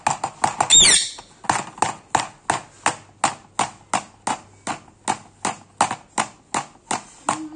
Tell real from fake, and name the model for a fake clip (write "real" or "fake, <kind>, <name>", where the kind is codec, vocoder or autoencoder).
real